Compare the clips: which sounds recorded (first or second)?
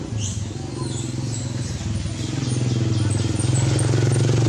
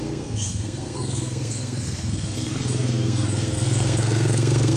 first